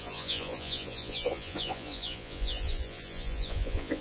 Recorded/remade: remade